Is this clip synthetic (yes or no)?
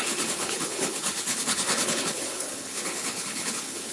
yes